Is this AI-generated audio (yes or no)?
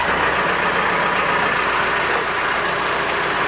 no